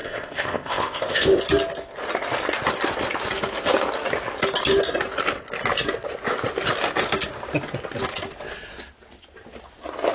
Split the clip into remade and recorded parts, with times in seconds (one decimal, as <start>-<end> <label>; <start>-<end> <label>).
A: 0.0-1.4 remade; 1.4-10.1 recorded